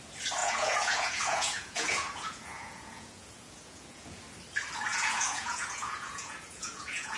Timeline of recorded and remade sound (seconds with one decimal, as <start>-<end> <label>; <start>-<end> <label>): 0.0-0.4 recorded; 0.4-4.2 remade; 4.2-4.9 recorded; 4.9-7.2 remade